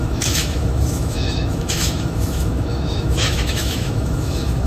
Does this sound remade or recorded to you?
remade